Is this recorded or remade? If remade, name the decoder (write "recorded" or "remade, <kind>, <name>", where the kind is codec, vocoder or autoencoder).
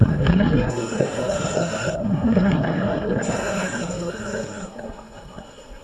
remade, codec, SNAC